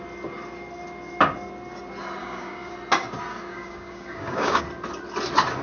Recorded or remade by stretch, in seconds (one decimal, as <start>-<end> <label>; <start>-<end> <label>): 0.0-2.2 recorded; 2.2-2.7 remade; 2.7-3.3 recorded; 3.3-4.6 remade; 4.6-5.6 recorded